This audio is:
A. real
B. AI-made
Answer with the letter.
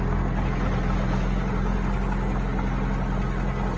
A